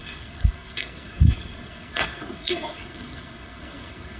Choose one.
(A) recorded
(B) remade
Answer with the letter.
B